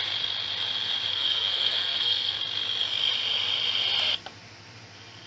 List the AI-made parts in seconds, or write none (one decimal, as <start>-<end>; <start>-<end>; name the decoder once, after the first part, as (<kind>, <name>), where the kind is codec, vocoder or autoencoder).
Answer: 1.1-2.4 (codec, SNAC)